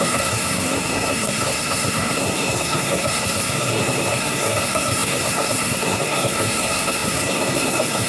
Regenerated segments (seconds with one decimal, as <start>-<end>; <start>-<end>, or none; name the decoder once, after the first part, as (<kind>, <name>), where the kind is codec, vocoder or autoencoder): 0.0-8.1 (codec, SNAC)